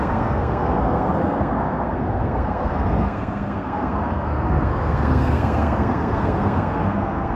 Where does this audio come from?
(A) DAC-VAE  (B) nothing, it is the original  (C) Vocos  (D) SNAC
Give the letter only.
D